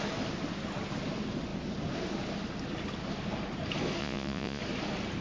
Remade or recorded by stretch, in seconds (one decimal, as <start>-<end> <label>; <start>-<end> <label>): 0.0-4.0 recorded; 4.0-4.6 remade; 4.6-5.2 recorded